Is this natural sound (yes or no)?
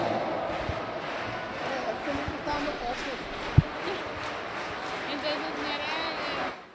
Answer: yes